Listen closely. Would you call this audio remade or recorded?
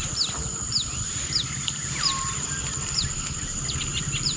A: recorded